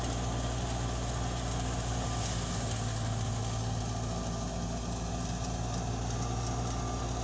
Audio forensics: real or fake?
real